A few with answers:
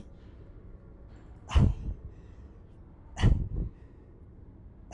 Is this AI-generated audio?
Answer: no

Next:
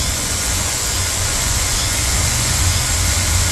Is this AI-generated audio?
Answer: yes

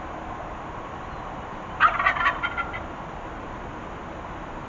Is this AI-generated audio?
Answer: no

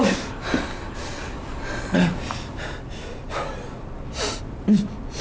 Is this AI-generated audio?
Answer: no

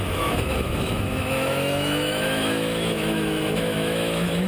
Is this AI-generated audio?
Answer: yes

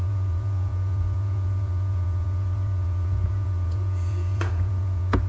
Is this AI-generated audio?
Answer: yes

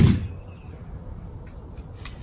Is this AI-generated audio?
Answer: no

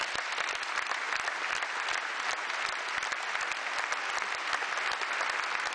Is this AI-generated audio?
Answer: no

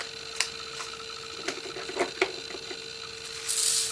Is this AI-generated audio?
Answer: no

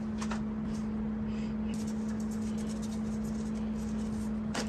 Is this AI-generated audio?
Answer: no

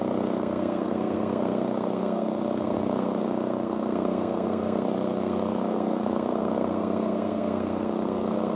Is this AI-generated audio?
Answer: yes